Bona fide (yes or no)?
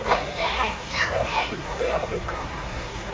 no